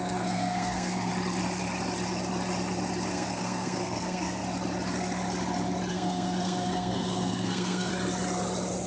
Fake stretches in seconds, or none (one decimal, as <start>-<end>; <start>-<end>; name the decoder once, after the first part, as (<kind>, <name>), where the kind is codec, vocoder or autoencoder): 0.0-1.1 (codec, SNAC); 3.1-4.4; 5.9-7.9